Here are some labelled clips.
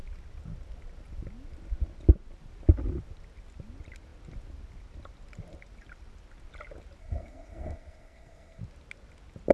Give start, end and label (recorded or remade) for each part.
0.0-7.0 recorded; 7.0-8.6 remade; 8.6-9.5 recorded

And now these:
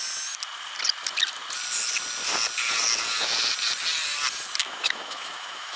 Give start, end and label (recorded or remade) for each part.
0.0-4.6 recorded; 4.6-5.8 remade

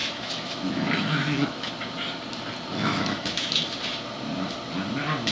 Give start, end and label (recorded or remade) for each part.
0.0-1.7 remade; 1.7-2.8 recorded; 2.8-3.6 remade; 3.6-5.3 recorded